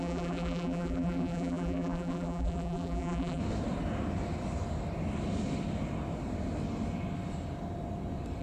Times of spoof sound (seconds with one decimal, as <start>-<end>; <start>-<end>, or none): 0.0-3.4